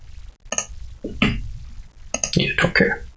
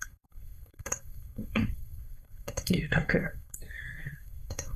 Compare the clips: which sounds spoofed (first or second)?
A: second